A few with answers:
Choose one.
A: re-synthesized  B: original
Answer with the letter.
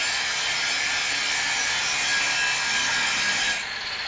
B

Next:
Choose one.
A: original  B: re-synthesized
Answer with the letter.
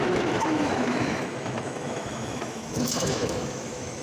B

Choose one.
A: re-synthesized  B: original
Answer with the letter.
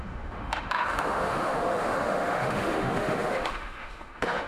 A